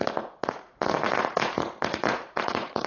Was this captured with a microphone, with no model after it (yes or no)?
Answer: no